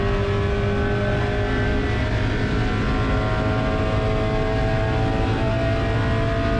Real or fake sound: real